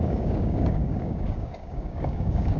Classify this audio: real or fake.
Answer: fake